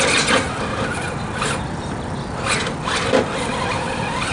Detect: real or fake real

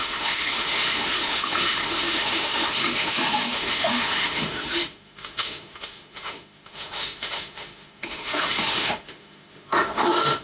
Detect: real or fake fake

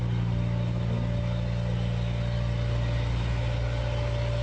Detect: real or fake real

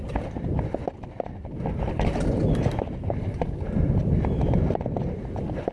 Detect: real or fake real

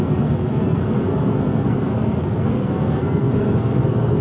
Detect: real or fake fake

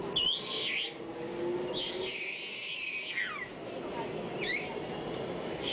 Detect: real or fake real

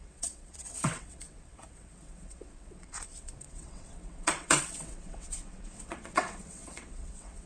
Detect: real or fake fake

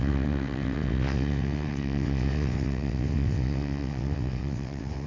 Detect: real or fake fake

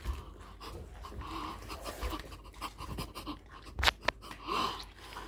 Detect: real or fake real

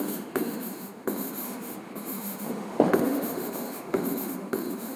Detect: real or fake fake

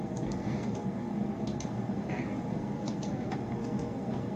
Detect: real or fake fake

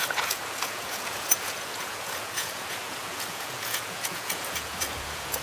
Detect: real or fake fake